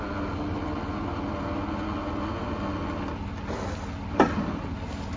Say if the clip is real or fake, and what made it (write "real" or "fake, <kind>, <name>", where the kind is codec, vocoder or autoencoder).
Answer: real